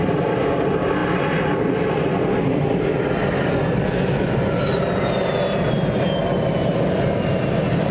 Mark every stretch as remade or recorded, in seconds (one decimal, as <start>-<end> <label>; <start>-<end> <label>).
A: 0.0-7.9 recorded